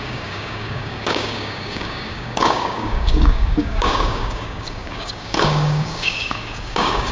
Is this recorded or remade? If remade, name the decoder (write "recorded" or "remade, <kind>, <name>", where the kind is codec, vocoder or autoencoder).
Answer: remade, codec, DAC